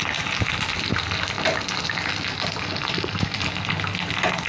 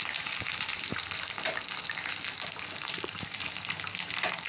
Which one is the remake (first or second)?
second